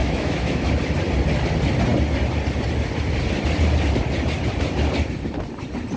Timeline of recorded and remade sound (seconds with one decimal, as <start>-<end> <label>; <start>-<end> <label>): 0.0-0.7 remade; 0.7-6.0 recorded